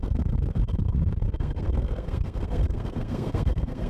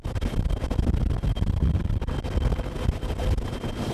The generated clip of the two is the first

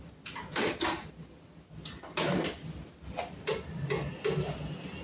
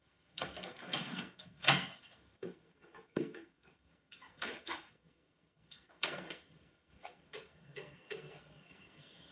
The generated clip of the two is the second